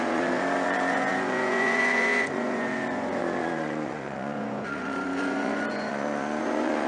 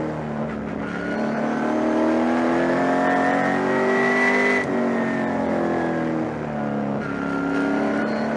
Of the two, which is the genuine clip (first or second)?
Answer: second